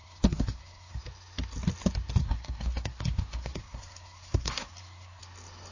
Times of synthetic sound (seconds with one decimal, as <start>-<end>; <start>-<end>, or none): 0.0-1.0; 2.2-5.2